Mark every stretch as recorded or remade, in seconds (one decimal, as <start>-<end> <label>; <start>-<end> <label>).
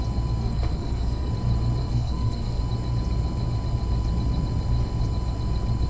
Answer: 0.0-0.4 recorded; 0.4-1.3 remade; 1.3-1.8 recorded; 1.8-2.6 remade; 2.6-5.9 recorded